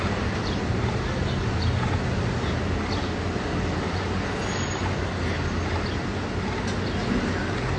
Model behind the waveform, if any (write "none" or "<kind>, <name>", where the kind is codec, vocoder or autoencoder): none